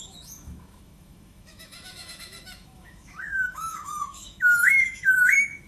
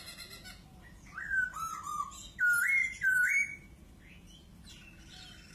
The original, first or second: second